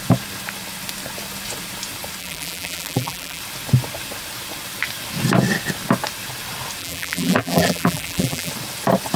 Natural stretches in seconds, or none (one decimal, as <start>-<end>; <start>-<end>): 0.0-2.2; 3.4-6.8; 8.5-9.2